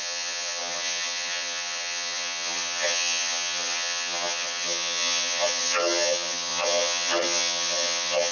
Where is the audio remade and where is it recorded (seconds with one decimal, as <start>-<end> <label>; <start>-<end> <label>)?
0.0-8.3 remade